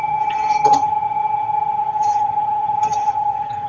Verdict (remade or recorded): remade